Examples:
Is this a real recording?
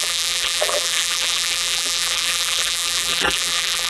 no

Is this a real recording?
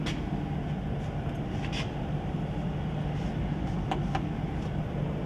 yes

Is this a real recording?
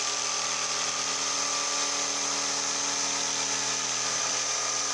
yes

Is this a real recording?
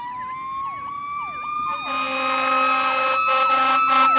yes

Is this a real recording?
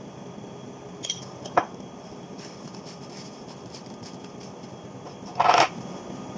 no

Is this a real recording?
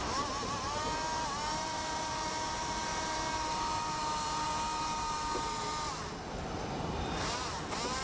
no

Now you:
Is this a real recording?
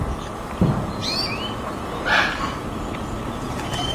yes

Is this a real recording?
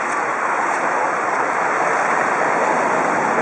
yes